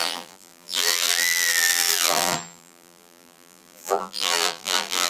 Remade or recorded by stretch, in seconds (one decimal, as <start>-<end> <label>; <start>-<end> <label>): 0.0-5.1 remade